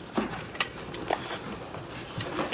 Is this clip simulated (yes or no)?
no